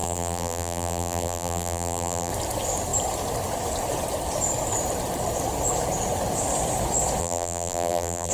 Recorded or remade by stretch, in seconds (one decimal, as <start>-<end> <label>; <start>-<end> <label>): 0.0-2.3 remade; 2.3-7.2 recorded; 7.2-8.3 remade